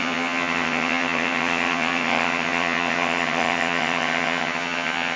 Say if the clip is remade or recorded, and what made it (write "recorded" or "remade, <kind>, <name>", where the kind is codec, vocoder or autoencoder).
remade, vocoder, HiFi-GAN